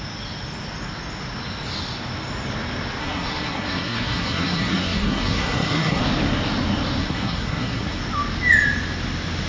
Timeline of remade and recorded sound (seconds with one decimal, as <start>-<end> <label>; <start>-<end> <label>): 0.0-3.0 recorded; 3.0-6.0 remade; 6.0-7.0 recorded; 7.0-8.0 remade; 8.0-9.5 recorded